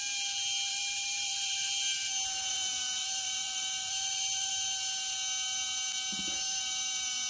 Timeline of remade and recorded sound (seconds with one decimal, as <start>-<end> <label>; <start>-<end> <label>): 0.0-0.7 recorded; 0.7-1.7 remade; 1.7-2.5 recorded; 2.5-4.5 remade; 4.5-7.3 recorded

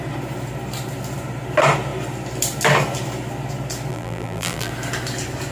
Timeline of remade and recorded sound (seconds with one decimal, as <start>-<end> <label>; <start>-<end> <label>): 0.0-3.9 recorded; 3.9-4.7 remade; 4.7-5.5 recorded

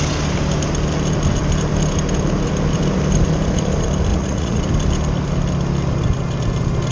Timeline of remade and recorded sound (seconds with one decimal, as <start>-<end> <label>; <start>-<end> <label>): 0.0-4.1 recorded; 4.1-4.6 remade; 4.6-6.9 recorded

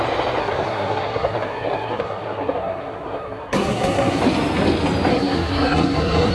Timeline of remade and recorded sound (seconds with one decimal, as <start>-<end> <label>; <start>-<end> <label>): 0.0-0.4 recorded; 0.4-4.2 remade; 4.2-5.1 recorded; 5.1-6.3 remade

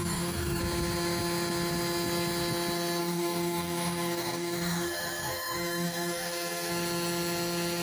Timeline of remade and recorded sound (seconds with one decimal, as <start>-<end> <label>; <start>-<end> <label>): 0.0-0.6 remade; 0.6-3.0 recorded; 3.0-6.7 remade; 6.7-7.8 recorded

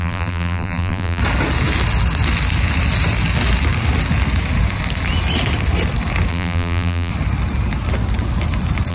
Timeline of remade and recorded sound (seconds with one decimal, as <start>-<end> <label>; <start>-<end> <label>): 0.0-1.2 remade; 1.2-6.3 recorded; 6.3-7.1 remade; 7.1-8.9 recorded

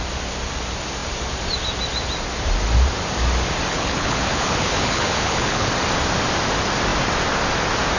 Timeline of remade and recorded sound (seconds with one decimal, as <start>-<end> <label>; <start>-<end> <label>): 0.0-3.7 recorded; 3.7-5.7 remade; 5.7-8.0 recorded

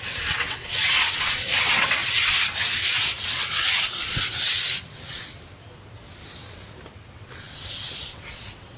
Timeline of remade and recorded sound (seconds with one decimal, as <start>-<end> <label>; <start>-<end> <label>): 0.0-5.3 remade; 5.3-7.1 recorded; 7.1-8.8 remade